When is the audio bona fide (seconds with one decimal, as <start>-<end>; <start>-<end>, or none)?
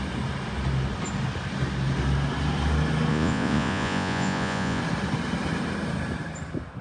0.0-3.1; 4.8-6.8